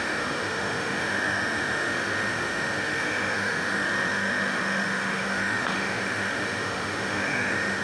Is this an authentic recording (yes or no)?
no